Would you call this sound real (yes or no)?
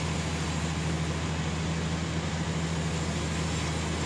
yes